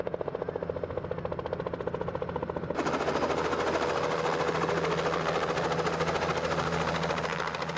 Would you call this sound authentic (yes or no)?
yes